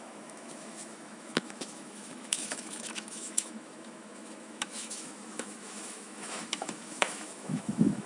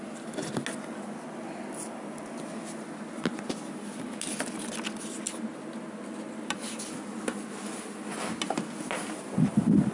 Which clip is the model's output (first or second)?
first